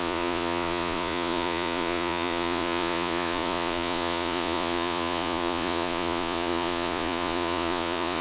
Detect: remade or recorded remade